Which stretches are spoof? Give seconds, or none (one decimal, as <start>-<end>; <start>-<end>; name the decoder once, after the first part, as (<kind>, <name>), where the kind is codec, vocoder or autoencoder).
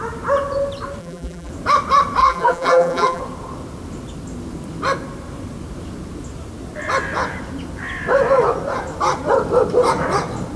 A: 1.0-1.5 (vocoder, BigVGAN v2); 2.2-3.2